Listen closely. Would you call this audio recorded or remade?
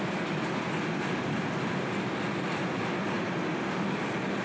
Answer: recorded